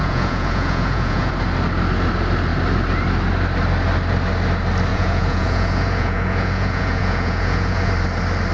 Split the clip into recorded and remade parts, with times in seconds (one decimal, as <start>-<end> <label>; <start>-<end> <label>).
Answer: 0.0-1.3 remade; 1.3-4.9 recorded; 4.9-7.9 remade; 7.9-8.5 recorded